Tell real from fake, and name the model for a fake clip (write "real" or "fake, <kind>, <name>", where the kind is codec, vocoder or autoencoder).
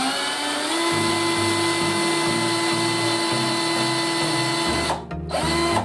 real